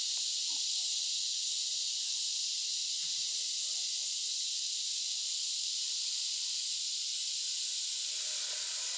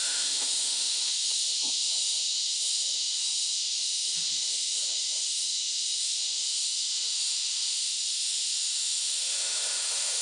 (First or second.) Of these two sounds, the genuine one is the first